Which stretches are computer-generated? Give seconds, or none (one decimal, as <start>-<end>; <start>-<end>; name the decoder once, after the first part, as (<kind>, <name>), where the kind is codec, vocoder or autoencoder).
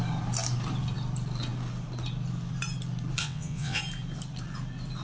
3.2-3.8 (vocoder, WaveNeXt)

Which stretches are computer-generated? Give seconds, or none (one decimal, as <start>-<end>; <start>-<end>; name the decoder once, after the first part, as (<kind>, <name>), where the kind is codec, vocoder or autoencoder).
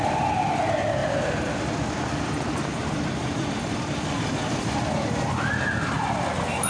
1.0-4.8 (vocoder, BigVGAN v2)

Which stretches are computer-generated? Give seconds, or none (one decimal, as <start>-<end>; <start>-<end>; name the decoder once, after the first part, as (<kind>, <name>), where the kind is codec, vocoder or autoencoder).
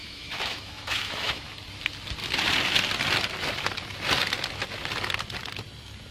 0.0-1.5 (autoencoder, DAC-VAE)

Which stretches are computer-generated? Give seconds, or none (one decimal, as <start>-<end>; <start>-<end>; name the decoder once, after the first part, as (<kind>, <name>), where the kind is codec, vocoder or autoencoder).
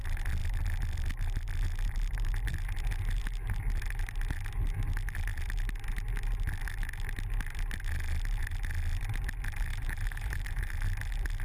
9.7-10.7 (vocoder, BigVGAN v2)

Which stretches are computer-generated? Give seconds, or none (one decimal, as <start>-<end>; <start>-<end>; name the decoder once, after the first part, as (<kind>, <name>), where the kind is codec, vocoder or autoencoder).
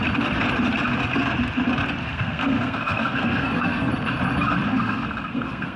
2.0-3.9 (codec, SNAC); 4.7-5.8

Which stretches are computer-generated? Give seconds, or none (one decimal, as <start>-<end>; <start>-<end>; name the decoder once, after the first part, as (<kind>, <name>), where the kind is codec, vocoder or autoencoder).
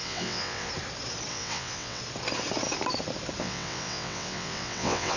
0.0-0.7 (vocoder, WaveNeXt); 1.3-2.0; 3.4-5.2